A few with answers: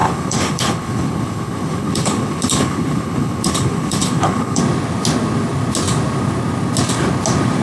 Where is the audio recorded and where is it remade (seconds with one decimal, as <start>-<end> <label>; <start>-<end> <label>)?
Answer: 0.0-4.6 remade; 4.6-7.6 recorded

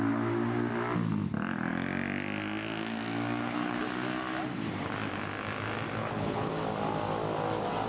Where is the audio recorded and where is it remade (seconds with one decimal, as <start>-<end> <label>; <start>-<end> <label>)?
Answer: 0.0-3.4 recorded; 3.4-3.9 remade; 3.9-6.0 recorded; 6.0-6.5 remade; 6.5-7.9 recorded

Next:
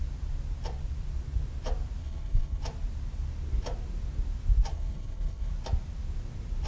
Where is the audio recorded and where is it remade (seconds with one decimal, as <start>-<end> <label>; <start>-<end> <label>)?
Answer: 0.0-2.0 recorded; 2.0-2.6 remade; 2.6-4.7 recorded; 4.7-5.5 remade; 5.5-6.7 recorded

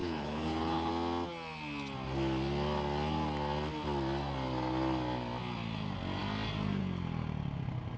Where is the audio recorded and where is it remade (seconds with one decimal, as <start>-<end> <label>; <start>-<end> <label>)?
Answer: 0.0-0.9 remade; 0.9-8.0 recorded

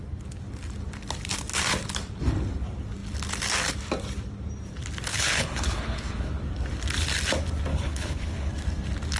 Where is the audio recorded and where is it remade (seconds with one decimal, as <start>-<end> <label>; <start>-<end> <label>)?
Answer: 0.0-5.1 recorded; 5.1-6.4 remade; 6.4-7.7 recorded; 7.7-8.5 remade; 8.5-9.2 recorded

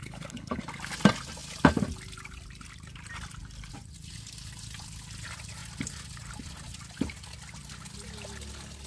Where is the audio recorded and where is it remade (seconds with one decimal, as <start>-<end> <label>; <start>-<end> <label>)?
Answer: 0.0-0.6 remade; 0.6-8.9 recorded

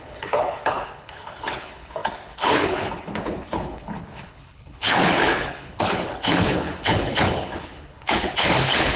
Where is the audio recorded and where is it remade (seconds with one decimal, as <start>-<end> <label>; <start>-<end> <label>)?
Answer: 0.0-9.0 remade